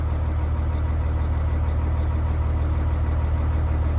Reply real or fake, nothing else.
real